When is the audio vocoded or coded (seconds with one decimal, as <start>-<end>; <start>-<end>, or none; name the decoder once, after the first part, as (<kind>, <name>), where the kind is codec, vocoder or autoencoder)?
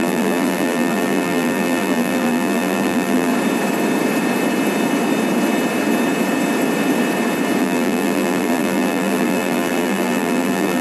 0.0-3.3 (vocoder, BigVGAN v2); 7.6-10.8